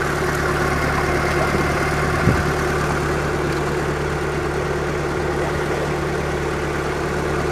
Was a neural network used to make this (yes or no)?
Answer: no